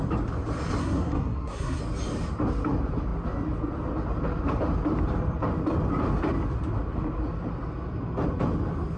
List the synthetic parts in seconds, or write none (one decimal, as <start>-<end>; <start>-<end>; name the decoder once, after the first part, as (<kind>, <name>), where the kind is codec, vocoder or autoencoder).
0.8-1.8 (codec, SNAC)